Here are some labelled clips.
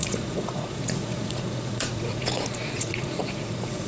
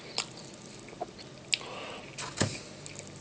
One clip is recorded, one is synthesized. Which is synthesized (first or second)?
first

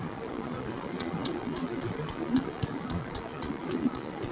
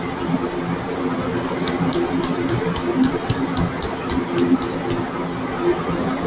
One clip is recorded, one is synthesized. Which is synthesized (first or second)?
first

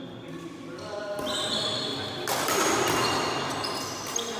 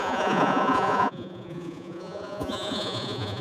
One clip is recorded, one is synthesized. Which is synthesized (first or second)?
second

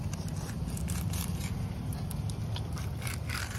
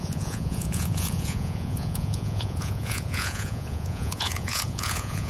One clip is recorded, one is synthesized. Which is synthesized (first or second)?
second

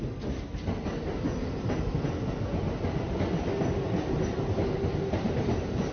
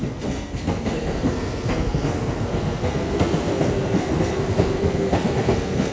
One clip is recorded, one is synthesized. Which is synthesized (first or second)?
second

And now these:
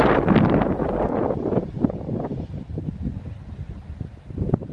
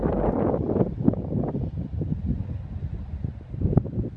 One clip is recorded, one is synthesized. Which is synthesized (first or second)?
first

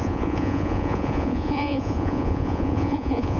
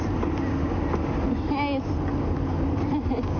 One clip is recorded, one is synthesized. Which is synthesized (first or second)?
first